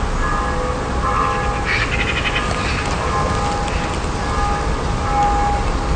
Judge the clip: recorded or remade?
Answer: recorded